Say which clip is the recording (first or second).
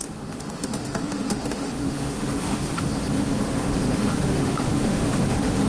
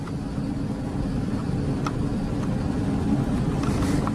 second